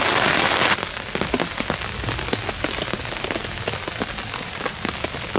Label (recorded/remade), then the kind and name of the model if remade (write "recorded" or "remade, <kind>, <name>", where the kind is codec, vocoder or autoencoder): recorded